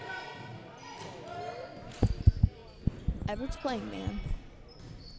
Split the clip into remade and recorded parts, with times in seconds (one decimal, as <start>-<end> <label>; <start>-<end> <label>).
0.0-5.2 recorded